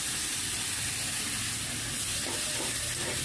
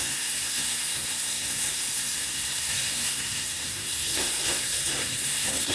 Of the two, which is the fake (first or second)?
second